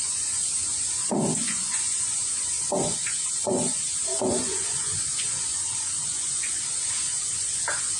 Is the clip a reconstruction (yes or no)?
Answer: yes